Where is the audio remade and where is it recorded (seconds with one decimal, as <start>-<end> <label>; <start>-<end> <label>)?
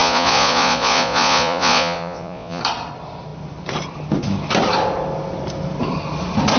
0.0-2.6 remade; 2.6-6.6 recorded